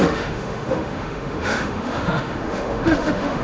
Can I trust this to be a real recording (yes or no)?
no